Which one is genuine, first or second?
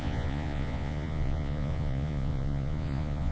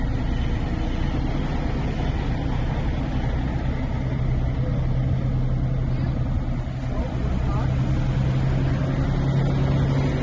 second